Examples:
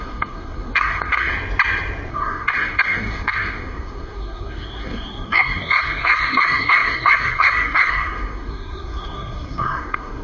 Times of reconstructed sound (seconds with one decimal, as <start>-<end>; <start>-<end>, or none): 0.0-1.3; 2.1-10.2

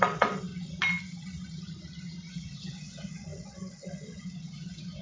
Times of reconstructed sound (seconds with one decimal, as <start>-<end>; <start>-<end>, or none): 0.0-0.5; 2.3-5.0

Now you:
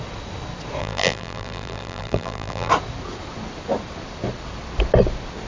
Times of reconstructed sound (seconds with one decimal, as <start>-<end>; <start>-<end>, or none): 0.8-2.7

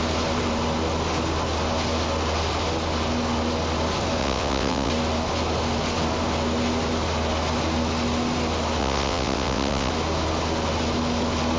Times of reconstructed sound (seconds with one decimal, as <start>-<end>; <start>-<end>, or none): 4.2-4.9; 8.8-9.9